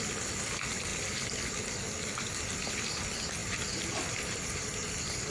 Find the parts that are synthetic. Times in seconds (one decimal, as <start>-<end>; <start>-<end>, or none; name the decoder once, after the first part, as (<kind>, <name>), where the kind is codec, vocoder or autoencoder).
none